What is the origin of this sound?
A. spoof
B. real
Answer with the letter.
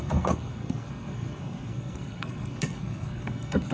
A